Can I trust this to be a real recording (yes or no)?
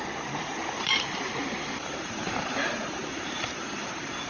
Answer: no